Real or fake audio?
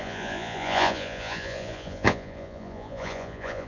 fake